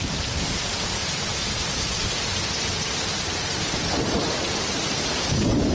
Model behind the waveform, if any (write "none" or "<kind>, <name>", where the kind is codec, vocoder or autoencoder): vocoder, BigVGAN v2